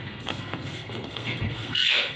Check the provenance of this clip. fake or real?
fake